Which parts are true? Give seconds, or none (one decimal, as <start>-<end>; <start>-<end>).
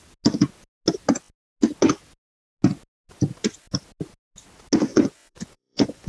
0.0-4.9